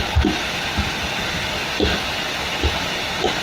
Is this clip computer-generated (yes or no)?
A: no